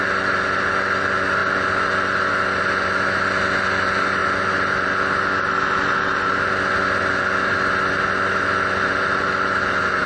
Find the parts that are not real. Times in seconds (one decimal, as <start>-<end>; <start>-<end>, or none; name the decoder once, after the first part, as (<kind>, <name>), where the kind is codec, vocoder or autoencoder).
none